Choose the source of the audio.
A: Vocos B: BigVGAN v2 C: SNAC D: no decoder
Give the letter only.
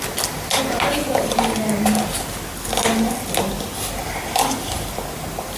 D